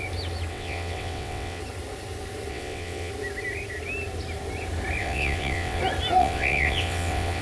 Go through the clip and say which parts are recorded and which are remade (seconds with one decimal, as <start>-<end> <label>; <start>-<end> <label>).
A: 0.0-0.5 recorded; 0.5-1.6 remade; 1.6-2.5 recorded; 2.5-3.1 remade; 3.1-5.0 recorded; 5.0-5.8 remade; 5.8-6.2 recorded; 6.2-7.4 remade